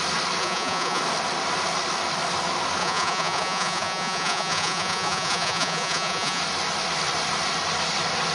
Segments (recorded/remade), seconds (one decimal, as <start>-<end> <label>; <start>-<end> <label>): 0.0-0.4 recorded; 0.4-1.0 remade; 1.0-2.8 recorded; 2.8-6.4 remade; 6.4-8.3 recorded

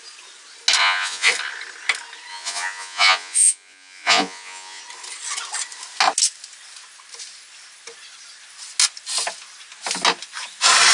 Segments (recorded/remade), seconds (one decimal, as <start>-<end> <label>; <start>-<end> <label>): 0.0-0.8 recorded; 0.8-1.3 remade; 1.3-2.3 recorded; 2.3-4.8 remade; 4.8-10.9 recorded

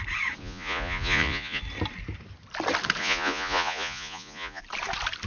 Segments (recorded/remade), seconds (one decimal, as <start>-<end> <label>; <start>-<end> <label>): 0.0-0.4 recorded; 0.4-1.6 remade; 1.6-3.0 recorded; 3.0-4.6 remade; 4.6-5.3 recorded

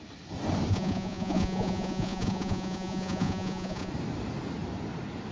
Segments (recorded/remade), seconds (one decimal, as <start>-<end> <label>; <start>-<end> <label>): 0.0-0.7 recorded; 0.7-3.9 remade; 3.9-5.3 recorded

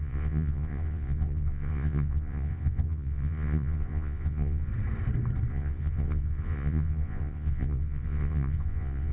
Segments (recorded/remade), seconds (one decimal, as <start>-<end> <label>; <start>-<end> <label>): 0.0-4.7 remade; 4.7-5.5 recorded; 5.5-9.1 remade

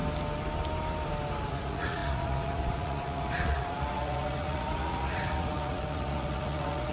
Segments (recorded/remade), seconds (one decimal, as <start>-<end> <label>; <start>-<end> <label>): 0.0-1.5 recorded; 1.5-6.9 remade

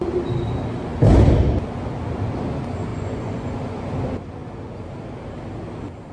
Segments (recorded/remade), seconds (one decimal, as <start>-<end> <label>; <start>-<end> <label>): 0.0-2.9 recorded; 2.9-3.9 remade; 3.9-6.1 recorded

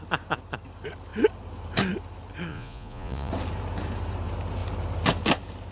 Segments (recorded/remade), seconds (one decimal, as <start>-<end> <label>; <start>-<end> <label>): 0.0-2.5 recorded; 2.5-3.3 remade; 3.3-5.7 recorded